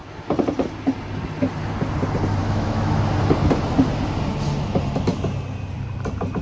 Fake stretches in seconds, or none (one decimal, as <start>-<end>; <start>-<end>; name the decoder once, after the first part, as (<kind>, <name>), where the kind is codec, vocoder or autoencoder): 2.4-3.0 (autoencoder, DAC-VAE)